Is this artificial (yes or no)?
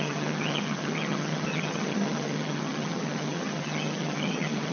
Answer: yes